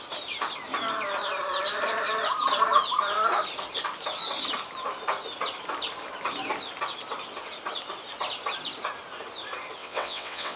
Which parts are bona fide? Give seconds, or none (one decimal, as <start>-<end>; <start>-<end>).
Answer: 0.0-9.8